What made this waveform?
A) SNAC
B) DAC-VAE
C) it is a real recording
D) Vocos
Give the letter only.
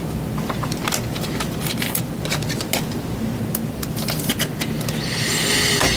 C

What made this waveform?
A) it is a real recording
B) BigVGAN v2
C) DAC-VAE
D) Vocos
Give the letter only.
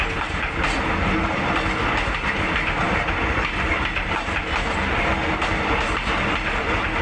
A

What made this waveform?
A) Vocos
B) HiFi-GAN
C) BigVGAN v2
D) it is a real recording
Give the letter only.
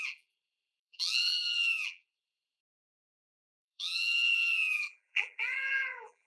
C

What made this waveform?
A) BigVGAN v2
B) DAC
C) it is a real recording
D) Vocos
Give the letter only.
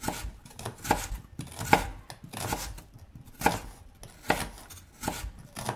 C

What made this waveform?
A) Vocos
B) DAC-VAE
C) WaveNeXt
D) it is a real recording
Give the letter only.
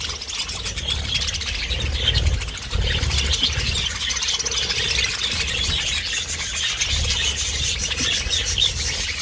D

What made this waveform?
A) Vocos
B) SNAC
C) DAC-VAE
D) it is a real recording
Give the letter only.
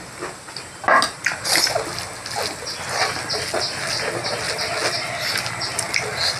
D